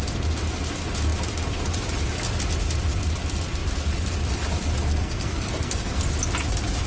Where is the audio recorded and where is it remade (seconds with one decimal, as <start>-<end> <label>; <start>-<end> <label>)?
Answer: 0.0-4.9 recorded; 4.9-6.0 remade; 6.0-6.9 recorded